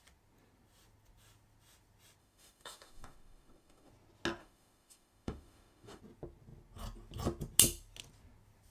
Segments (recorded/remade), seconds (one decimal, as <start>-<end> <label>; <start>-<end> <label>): 0.0-2.2 recorded; 2.2-3.9 remade; 3.9-4.4 recorded; 4.4-6.0 remade; 6.0-8.7 recorded